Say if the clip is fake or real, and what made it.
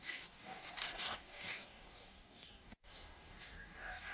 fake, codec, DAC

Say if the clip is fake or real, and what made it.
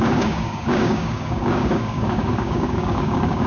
fake, codec, DAC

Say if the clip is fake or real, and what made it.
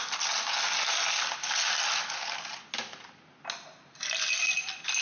real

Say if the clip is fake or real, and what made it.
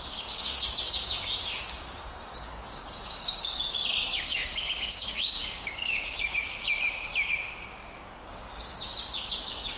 fake, codec, DAC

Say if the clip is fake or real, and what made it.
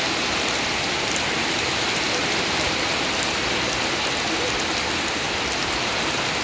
real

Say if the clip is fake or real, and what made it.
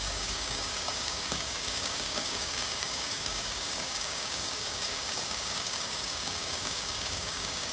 fake, codec, DAC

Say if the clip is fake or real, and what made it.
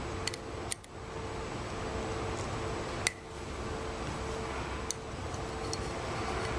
real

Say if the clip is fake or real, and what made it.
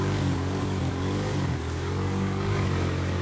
fake, codec, DAC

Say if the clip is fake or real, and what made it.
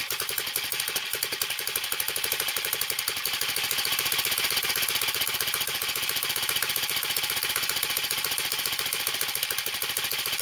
real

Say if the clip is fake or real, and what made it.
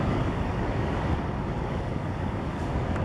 fake, codec, DAC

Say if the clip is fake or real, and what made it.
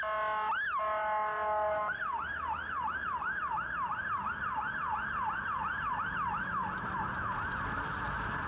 real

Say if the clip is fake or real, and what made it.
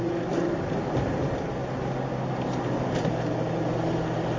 real